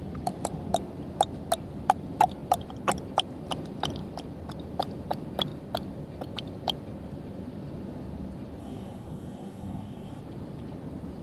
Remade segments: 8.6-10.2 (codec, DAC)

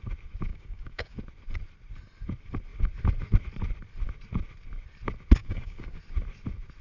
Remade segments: 0.5-1.2 (codec, DAC); 5.4-6.0